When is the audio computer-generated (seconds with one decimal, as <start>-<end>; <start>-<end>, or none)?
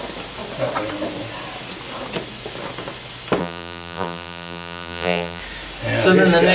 3.4-5.4